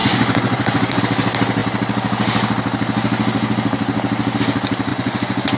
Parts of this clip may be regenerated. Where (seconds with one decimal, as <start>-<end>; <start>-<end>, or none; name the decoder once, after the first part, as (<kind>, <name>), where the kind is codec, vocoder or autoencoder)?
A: 0.0-1.0 (vocoder, Vocos); 4.9-5.6